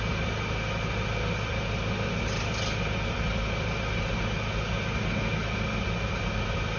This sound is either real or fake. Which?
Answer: real